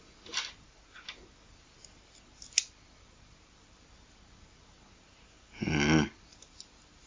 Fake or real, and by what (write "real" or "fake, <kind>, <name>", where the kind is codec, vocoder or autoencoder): real